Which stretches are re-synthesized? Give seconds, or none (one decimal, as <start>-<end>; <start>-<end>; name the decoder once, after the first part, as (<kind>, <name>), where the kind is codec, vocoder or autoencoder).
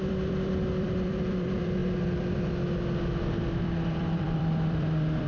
0.0-1.8 (vocoder, BigVGAN v2); 3.5-5.3